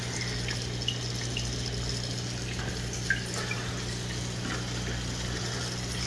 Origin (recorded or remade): recorded